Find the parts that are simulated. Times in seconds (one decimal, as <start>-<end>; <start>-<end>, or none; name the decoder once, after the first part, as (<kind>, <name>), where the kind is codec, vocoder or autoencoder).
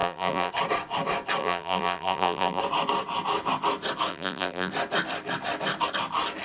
0.0-0.5 (vocoder, BigVGAN v2); 1.4-2.6; 4.1-4.7